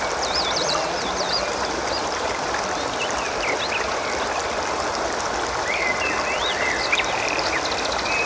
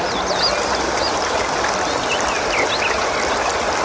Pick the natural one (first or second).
second